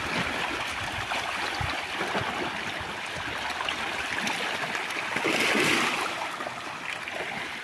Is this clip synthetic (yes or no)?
no